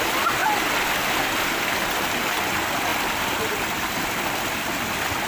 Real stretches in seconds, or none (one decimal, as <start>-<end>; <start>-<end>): 0.0-5.3